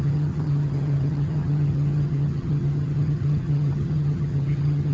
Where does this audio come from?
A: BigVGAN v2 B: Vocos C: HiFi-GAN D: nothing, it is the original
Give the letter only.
C